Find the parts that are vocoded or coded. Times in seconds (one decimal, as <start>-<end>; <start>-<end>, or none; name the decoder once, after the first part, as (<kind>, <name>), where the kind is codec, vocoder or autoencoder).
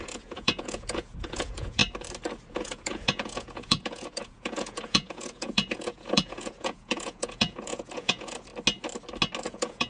0.0-1.8 (vocoder, Vocos); 2.5-8.5; 9.4-9.9